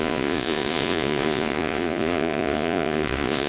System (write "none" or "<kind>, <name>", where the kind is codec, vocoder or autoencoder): vocoder, Vocos